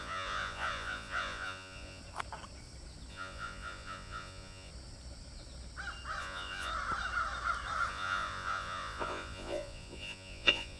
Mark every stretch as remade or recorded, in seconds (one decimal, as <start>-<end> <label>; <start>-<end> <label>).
0.0-2.0 remade; 2.0-3.1 recorded; 3.1-4.7 remade; 4.7-6.2 recorded; 6.2-6.7 remade; 6.7-7.9 recorded; 7.9-10.8 remade